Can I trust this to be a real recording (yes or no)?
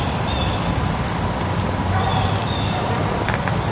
yes